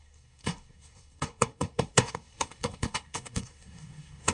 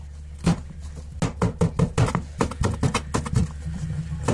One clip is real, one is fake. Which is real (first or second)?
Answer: second